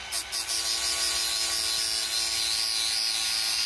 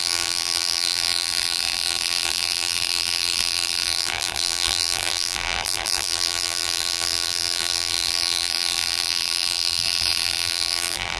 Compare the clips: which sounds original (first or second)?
first